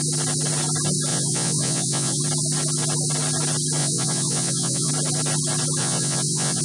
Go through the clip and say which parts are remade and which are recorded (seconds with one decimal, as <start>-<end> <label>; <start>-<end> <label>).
0.0-1.1 recorded; 1.1-2.2 remade; 2.2-3.8 recorded; 3.8-4.9 remade; 4.9-5.8 recorded; 5.8-6.6 remade